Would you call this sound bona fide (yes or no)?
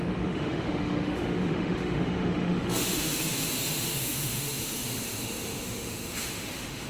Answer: no